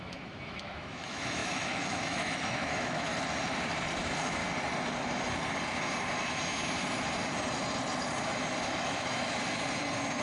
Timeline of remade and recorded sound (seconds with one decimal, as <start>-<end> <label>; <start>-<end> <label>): 0.0-3.1 remade; 3.1-4.0 recorded; 4.0-4.4 remade; 4.4-8.8 recorded; 8.8-9.4 remade; 9.4-10.2 recorded